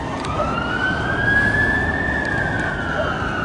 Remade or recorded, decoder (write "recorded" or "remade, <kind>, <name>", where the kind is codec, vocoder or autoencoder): recorded